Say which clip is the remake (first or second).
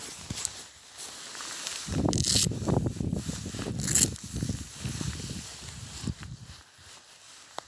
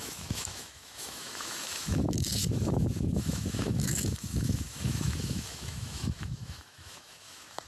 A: second